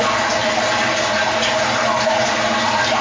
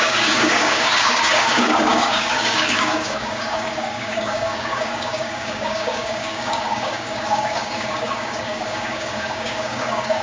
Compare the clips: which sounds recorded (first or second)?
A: first